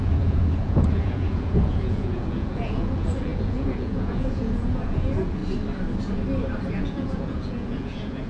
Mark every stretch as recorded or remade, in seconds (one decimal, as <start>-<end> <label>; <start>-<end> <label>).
0.0-5.4 remade; 5.4-6.7 recorded; 6.7-8.3 remade